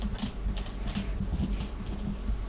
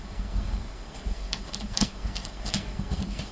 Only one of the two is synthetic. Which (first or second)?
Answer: second